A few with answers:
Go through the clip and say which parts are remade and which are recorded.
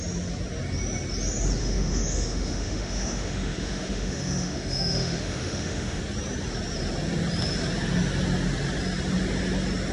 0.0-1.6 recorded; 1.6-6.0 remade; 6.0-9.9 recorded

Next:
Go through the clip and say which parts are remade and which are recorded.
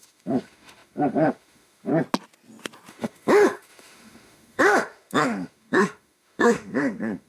0.0-1.9 remade; 1.9-2.9 recorded; 2.9-7.3 remade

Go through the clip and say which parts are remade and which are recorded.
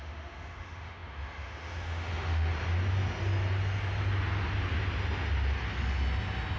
0.0-2.5 remade; 2.5-6.6 recorded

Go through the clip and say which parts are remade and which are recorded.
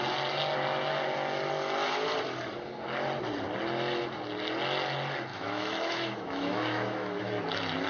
0.0-5.3 recorded; 5.3-7.4 remade; 7.4-7.9 recorded